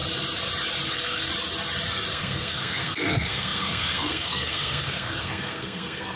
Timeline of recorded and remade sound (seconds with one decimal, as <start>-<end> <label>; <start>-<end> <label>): 0.0-0.9 recorded; 0.9-1.3 remade; 1.3-2.1 recorded; 2.1-6.2 remade